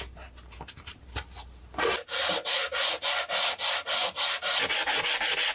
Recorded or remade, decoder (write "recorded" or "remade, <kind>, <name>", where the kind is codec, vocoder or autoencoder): recorded